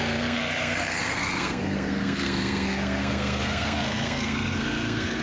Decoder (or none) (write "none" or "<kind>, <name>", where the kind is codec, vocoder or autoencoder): codec, SNAC